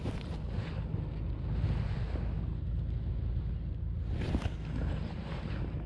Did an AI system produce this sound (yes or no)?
no